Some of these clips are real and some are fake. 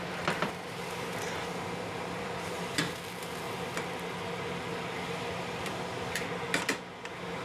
fake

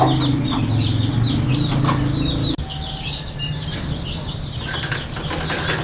real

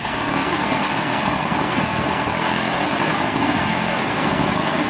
fake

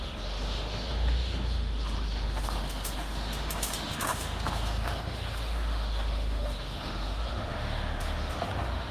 fake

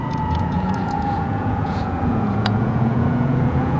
fake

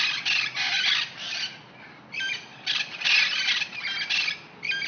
real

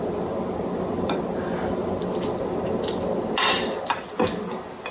real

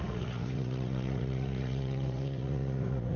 fake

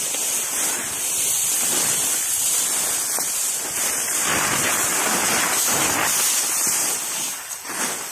real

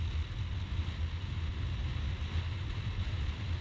real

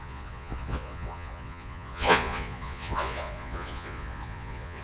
fake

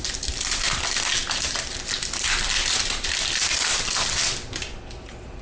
real